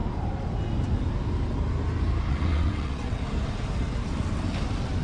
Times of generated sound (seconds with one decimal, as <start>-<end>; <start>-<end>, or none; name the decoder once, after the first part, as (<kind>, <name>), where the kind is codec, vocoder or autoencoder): 2.3-3.2 (vocoder, WaveNeXt)